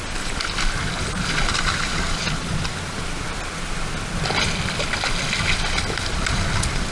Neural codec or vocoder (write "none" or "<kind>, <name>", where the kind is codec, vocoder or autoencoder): none